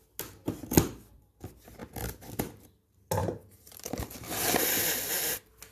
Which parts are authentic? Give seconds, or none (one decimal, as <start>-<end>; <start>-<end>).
0.0-3.2; 4.2-5.7